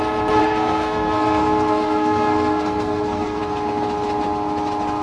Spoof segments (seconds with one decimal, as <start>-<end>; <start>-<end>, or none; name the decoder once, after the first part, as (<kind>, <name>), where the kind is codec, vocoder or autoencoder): 0.4-3.4 (codec, SNAC)